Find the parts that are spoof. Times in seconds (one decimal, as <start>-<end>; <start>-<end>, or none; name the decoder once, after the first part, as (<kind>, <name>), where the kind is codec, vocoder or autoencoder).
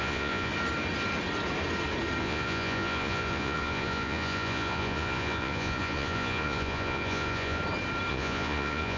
0.0-0.5 (vocoder, Vocos); 2.2-7.6; 8.1-9.0